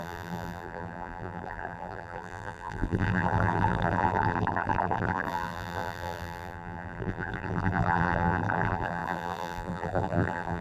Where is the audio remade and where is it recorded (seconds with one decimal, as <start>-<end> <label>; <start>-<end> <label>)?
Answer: 0.0-10.6 remade